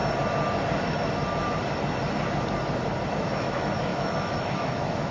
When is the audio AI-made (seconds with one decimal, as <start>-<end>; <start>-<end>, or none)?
3.1-5.1